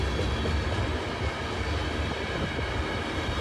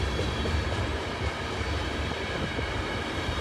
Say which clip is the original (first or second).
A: first